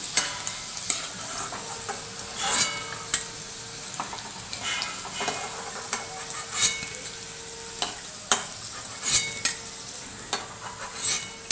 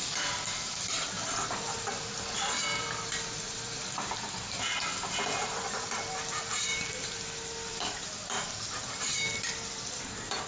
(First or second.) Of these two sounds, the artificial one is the second